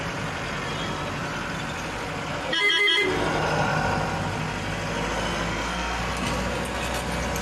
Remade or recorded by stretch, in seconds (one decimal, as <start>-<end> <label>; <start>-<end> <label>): 0.0-5.5 recorded; 5.5-6.0 remade; 6.0-7.4 recorded